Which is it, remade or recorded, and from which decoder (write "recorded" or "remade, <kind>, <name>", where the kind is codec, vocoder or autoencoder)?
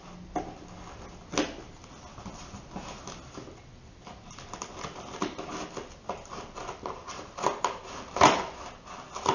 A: recorded